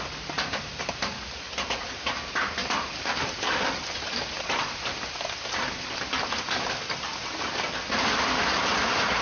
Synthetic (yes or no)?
no